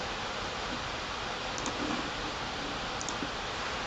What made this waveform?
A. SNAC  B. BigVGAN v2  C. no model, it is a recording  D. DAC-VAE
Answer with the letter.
C